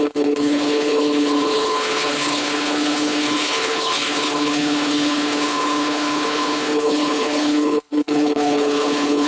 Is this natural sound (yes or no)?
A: no